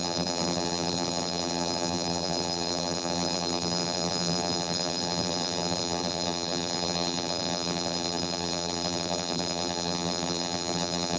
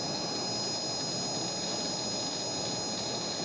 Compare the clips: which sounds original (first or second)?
second